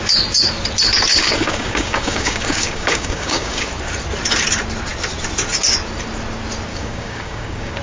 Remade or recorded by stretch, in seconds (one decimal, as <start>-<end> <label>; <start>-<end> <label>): 0.0-1.1 recorded; 1.1-3.7 remade; 3.7-6.7 recorded; 6.7-7.8 remade